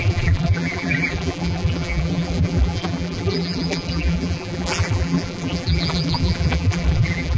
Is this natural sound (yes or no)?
no